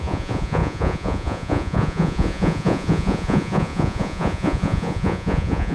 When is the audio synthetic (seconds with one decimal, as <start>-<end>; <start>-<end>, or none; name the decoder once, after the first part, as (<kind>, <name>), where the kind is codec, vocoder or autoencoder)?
0.0-5.7 (vocoder, Vocos)